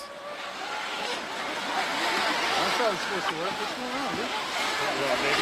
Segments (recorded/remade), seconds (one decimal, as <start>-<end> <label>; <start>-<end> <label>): 0.0-5.4 recorded